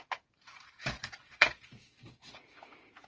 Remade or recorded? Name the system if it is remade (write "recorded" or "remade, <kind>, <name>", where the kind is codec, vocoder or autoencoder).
remade, vocoder, Vocos